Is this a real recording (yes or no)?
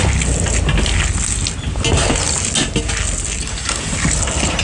yes